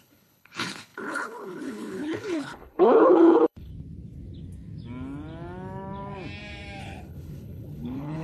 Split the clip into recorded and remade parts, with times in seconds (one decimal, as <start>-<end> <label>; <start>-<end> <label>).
0.0-3.7 remade; 3.7-6.8 recorded; 6.8-8.2 remade